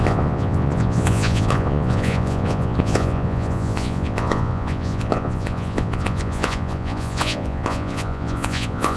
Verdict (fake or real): fake